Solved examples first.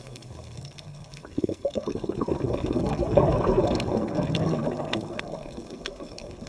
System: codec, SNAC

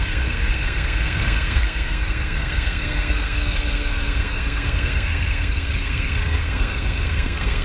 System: codec, SNAC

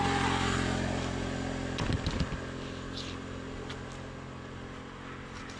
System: none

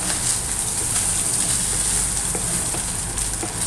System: none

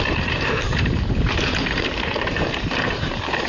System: vocoder, BigVGAN v2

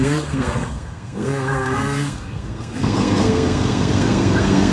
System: codec, SNAC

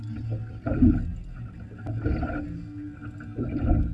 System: none